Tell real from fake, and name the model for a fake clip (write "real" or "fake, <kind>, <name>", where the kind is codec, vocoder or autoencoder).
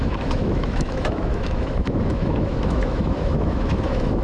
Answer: fake, autoencoder, DAC-VAE